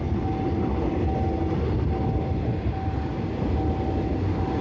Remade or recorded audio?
recorded